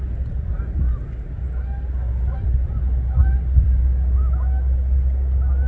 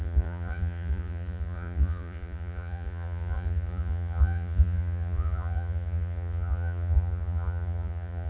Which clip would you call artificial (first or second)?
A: second